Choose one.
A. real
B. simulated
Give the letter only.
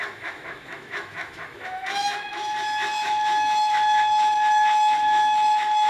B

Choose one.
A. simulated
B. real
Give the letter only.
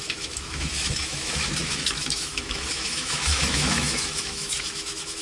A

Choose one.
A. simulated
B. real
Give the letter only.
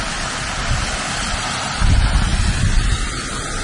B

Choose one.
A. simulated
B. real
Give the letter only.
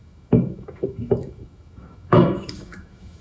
A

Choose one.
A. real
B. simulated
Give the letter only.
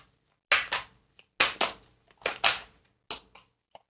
A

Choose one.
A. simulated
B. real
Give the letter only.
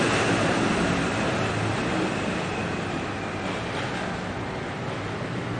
B